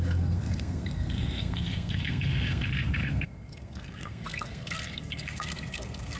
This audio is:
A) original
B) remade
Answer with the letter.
B